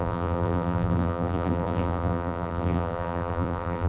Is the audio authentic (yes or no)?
no